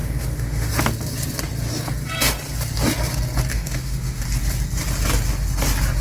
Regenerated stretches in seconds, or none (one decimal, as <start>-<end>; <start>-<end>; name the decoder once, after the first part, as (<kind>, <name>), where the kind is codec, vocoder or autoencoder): 0.0-0.7 (autoencoder, DAC-VAE); 3.5-4.2